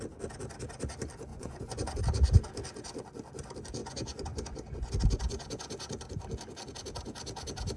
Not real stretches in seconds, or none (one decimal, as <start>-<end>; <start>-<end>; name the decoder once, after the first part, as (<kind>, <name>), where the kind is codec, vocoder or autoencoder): 1.3-2.0 (vocoder, Vocos); 3.8-4.9